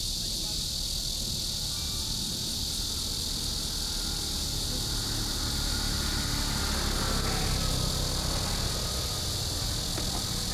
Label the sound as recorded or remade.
recorded